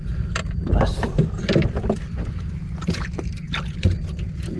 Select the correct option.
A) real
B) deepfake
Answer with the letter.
A